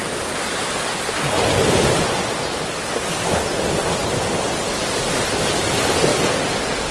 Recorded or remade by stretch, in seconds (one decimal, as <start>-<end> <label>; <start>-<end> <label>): 0.0-6.9 recorded

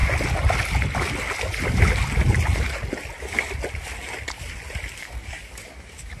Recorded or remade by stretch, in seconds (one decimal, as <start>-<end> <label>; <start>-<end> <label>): 0.0-5.0 recorded; 5.0-6.2 remade

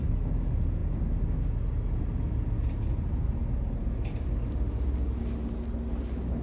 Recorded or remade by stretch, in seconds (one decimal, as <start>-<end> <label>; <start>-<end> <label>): 0.0-6.4 recorded

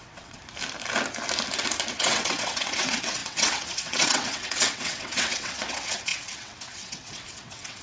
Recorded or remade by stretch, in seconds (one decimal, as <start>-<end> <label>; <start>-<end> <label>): 0.0-0.4 remade; 0.4-1.9 recorded; 1.9-7.8 remade

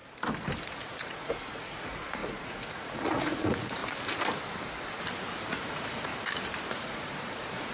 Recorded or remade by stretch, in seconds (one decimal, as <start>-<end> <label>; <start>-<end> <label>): 0.0-0.7 recorded; 0.7-3.8 remade; 3.8-5.5 recorded; 5.5-6.1 remade; 6.1-6.7 recorded; 6.7-7.7 remade

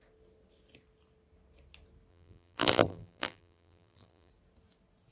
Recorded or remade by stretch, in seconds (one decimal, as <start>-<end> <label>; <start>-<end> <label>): 0.0-2.1 recorded; 2.1-4.3 remade; 4.3-5.1 recorded

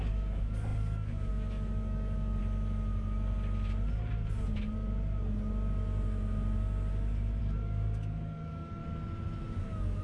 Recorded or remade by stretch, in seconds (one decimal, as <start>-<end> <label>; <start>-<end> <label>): 0.0-2.4 remade; 2.4-7.4 recorded; 7.4-8.8 remade; 8.8-9.6 recorded; 9.6-10.0 remade